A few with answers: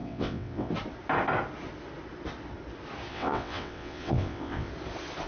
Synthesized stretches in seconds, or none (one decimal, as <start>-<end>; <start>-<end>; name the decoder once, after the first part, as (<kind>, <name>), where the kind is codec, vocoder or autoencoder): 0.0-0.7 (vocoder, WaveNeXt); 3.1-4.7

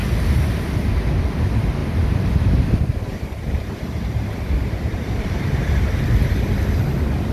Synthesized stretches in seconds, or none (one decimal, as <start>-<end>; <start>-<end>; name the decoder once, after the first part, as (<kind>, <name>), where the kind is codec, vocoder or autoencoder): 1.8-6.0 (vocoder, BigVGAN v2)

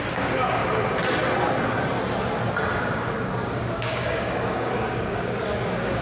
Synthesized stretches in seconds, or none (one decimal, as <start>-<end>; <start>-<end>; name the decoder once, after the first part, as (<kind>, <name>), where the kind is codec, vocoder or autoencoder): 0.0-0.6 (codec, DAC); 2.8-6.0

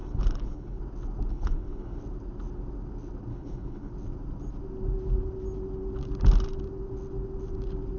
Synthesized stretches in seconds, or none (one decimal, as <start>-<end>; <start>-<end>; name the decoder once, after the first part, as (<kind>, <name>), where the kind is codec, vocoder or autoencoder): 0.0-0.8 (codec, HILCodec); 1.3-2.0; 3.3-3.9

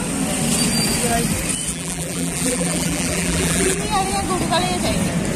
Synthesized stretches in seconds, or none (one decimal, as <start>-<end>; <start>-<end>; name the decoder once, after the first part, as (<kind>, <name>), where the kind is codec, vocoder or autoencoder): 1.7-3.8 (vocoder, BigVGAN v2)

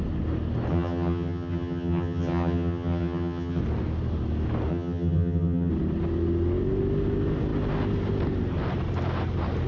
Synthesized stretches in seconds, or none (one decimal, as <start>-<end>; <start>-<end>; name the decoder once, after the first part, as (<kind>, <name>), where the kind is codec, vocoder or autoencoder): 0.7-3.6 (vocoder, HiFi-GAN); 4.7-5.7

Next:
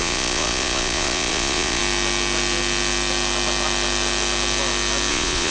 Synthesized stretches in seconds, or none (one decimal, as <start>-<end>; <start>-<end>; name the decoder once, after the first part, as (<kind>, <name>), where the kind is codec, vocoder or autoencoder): 0.0-1.8 (vocoder, Vocos); 5.1-5.5